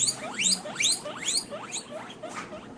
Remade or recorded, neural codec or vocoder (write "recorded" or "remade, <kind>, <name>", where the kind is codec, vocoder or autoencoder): recorded